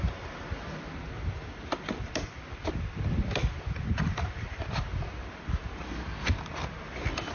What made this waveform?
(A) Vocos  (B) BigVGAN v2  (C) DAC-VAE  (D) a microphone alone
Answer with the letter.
D